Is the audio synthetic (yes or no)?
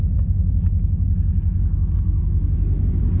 no